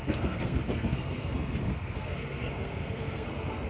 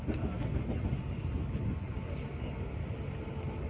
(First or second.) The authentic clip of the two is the second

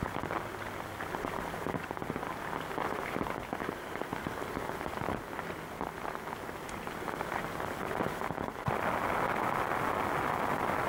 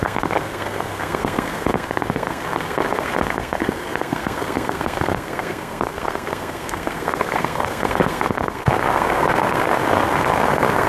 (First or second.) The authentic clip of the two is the first